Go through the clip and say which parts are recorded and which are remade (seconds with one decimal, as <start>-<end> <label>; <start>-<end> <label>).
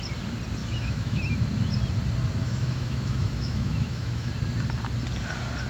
0.0-0.6 recorded; 0.6-1.2 remade; 1.2-2.4 recorded; 2.4-4.3 remade; 4.3-5.7 recorded